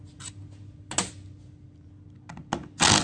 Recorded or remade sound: recorded